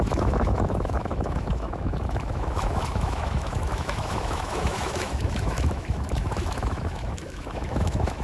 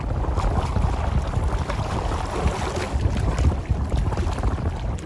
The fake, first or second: first